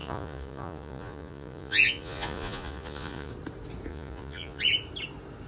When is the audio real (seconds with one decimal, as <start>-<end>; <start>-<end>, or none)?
3.3-3.9; 4.6-5.5